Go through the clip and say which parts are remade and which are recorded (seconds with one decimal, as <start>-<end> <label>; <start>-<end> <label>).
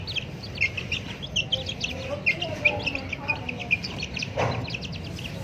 0.0-3.6 recorded; 3.6-4.4 remade; 4.4-5.4 recorded